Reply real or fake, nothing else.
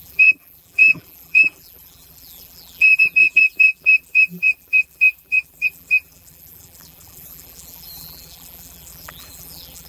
fake